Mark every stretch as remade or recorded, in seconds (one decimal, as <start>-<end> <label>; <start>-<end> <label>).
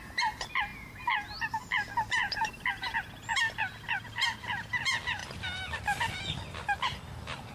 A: 0.0-7.5 recorded